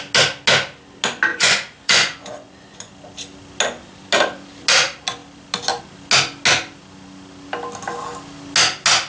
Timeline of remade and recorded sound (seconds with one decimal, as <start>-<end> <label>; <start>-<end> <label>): 0.0-1.3 recorded; 1.3-2.9 remade; 2.9-9.1 recorded